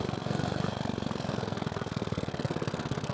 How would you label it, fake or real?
fake